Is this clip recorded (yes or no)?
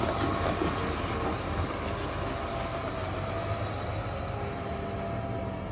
yes